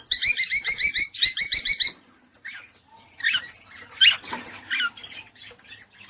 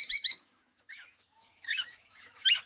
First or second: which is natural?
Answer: first